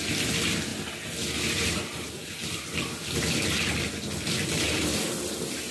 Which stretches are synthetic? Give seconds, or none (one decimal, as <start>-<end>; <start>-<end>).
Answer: none